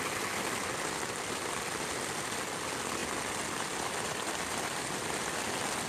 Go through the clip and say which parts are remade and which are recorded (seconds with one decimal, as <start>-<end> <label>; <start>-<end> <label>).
0.0-3.0 recorded; 3.0-3.9 remade; 3.9-5.9 recorded